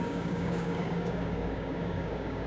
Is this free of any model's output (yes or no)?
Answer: no